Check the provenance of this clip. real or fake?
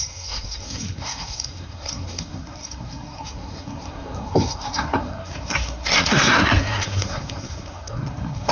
fake